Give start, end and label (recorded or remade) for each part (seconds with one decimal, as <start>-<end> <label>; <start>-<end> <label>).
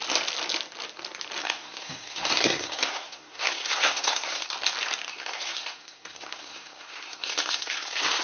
0.0-1.4 recorded; 1.4-4.5 remade; 4.5-5.1 recorded; 5.1-8.2 remade